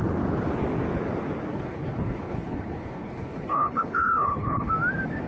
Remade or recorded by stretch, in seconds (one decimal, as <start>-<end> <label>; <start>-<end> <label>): 0.0-1.5 recorded; 1.5-4.7 remade; 4.7-5.3 recorded